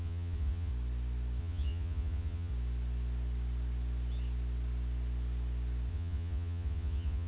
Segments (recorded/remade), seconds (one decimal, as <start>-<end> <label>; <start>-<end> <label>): 0.0-0.7 remade; 0.7-1.4 recorded; 1.4-2.5 remade; 2.5-5.9 recorded; 5.9-7.3 remade